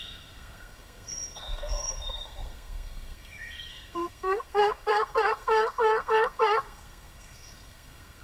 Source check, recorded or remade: remade